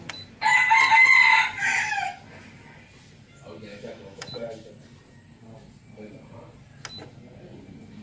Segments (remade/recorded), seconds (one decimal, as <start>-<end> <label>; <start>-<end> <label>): 0.0-1.6 recorded; 1.6-2.2 remade; 2.2-3.7 recorded; 3.7-4.7 remade; 4.7-8.0 recorded